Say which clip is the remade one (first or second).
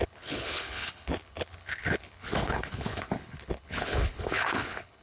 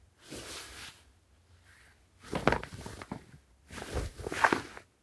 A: first